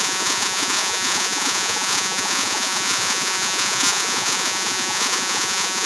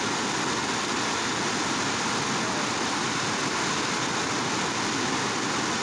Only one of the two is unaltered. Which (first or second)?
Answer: second